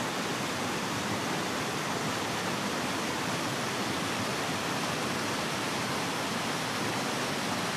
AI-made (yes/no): no